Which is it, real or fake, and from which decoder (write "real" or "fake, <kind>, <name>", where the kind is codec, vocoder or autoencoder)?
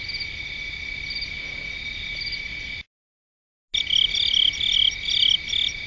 real